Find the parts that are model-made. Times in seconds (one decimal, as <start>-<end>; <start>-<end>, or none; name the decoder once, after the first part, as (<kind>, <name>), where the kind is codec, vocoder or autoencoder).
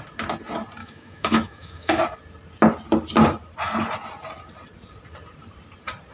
0.8-2.0 (autoencoder, DAC-VAE)